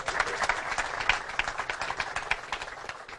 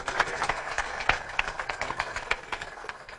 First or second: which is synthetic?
second